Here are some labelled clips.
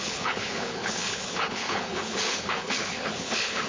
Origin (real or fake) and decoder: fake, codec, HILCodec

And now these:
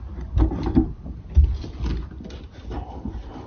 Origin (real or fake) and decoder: real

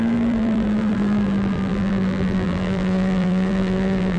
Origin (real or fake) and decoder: fake, vocoder, BigVGAN v2